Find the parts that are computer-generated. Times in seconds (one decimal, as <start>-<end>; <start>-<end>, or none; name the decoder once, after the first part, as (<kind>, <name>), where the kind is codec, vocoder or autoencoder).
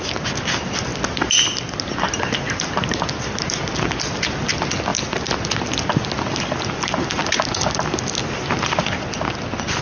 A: 4.9-5.9 (vocoder, BigVGAN v2)